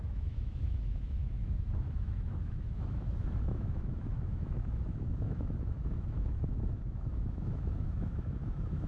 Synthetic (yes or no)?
yes